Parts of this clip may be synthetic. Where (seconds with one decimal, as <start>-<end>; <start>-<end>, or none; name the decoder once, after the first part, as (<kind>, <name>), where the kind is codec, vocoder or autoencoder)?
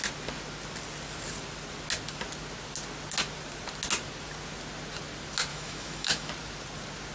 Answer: 5.5-6.3 (autoencoder, DAC-VAE)